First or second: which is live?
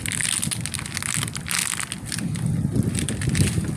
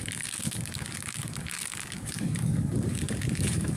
first